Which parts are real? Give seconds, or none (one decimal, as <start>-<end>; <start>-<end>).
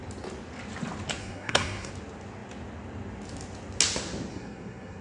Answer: 0.0-1.2; 1.9-4.3